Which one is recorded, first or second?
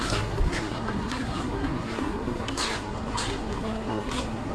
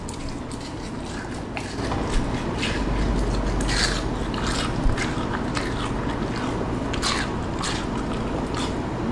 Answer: second